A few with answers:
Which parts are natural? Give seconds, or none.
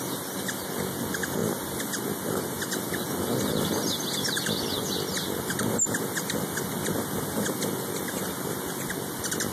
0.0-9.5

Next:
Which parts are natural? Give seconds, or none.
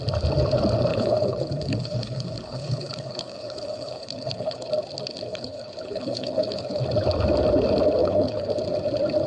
0.0-0.9; 4.7-5.3; 6.8-8.0; 8.5-9.3